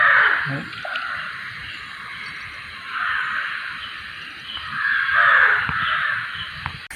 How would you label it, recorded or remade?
recorded